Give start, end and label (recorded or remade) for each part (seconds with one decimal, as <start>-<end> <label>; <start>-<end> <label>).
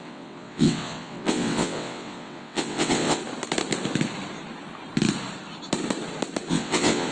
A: 0.0-3.2 remade; 3.2-6.5 recorded; 6.5-7.1 remade